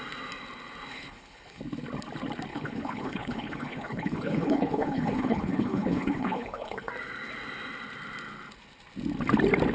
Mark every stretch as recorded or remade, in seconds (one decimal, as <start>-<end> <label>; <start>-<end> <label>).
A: 0.0-0.9 recorded; 0.9-1.6 remade; 1.6-2.5 recorded; 2.5-6.9 remade; 6.9-9.7 recorded